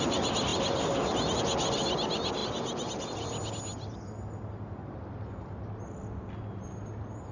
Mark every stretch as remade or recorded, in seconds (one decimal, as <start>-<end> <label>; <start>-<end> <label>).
0.0-0.5 recorded; 0.5-1.4 remade; 1.4-7.3 recorded